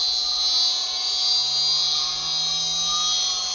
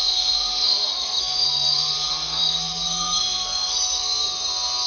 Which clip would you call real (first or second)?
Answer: first